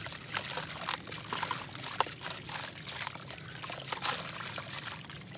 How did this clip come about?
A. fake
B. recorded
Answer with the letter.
B